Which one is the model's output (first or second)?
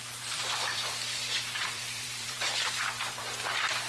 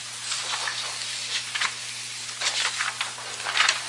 first